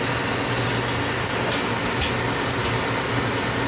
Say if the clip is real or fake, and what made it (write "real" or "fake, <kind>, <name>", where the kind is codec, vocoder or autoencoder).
real